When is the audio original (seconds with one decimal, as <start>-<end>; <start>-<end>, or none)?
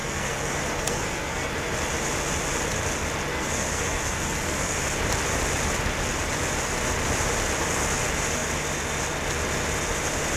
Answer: 1.5-3.3; 4.8-10.4